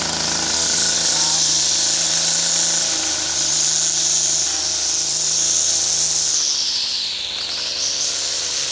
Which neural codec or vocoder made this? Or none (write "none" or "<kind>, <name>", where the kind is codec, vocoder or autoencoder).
none